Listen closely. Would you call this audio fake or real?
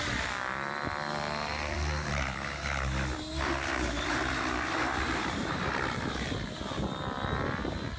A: fake